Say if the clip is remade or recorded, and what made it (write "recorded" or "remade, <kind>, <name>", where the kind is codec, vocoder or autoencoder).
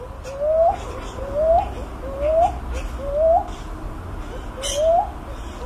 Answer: recorded